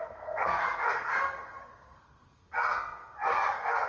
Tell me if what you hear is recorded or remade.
remade